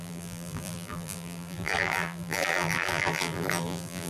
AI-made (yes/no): yes